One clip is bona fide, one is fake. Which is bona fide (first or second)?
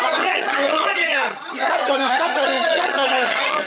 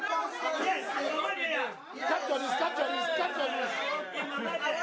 second